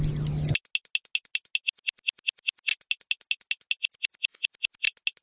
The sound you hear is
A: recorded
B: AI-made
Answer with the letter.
A